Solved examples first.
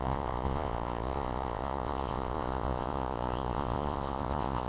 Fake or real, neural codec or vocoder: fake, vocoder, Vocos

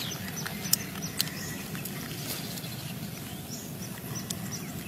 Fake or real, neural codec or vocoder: real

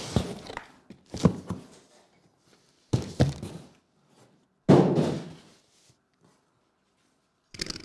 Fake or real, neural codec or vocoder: real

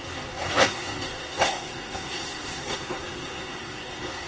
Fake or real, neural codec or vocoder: fake, codec, SNAC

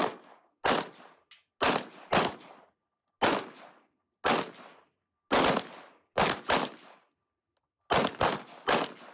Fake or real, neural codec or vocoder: real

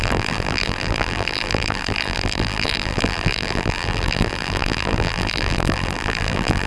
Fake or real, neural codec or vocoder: fake, vocoder, BigVGAN v2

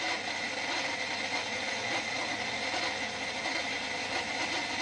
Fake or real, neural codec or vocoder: real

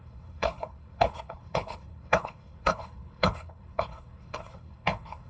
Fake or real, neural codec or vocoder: fake, codec, HILCodec